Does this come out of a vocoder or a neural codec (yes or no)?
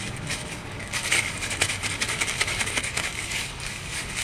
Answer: yes